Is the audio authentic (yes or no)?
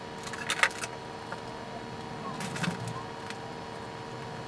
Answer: yes